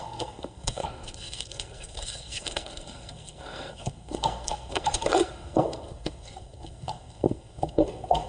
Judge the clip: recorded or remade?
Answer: remade